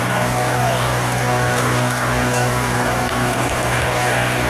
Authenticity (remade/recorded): remade